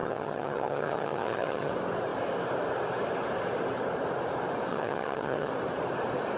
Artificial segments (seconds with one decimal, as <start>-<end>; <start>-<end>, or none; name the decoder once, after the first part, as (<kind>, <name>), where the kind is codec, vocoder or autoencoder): 0.0-1.7 (vocoder, HiFi-GAN); 4.7-5.5